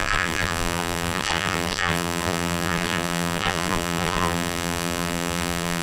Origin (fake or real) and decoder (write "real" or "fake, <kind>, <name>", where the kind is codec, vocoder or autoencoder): fake, vocoder, BigVGAN v2